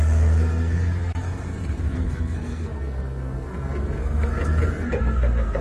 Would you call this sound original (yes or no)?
no